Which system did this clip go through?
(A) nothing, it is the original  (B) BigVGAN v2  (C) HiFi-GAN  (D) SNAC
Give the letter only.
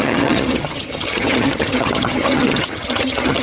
C